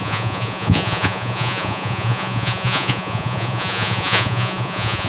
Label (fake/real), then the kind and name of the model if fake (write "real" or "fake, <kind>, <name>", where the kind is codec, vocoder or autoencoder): fake, vocoder, Vocos